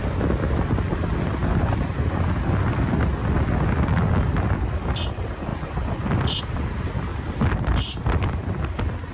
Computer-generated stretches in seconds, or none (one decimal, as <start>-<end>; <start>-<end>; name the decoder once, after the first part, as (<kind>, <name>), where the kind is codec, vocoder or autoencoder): none